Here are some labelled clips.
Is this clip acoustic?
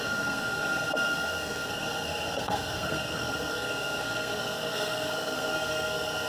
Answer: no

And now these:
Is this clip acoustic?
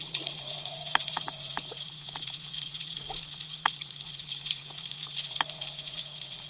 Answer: no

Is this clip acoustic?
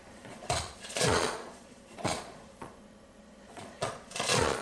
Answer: no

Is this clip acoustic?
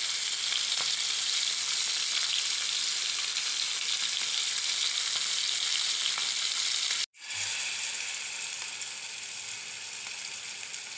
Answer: yes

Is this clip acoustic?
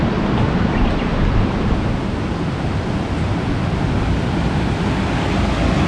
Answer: yes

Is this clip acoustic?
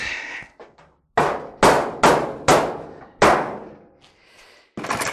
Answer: yes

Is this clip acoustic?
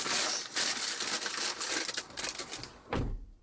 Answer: yes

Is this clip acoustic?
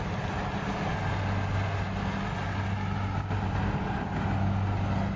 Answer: yes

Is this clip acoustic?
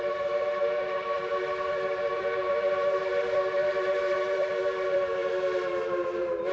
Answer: no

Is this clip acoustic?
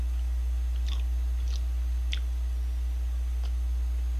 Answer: yes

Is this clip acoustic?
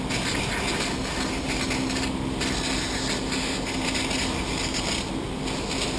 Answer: yes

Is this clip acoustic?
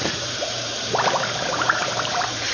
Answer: no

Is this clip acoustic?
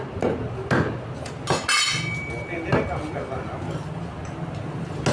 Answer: yes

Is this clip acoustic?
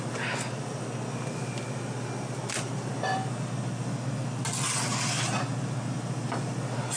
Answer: yes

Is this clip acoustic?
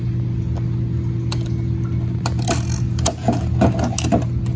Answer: yes